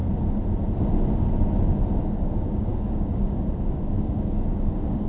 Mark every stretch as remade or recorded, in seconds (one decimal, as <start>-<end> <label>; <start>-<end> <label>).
0.0-1.7 recorded; 1.7-5.1 remade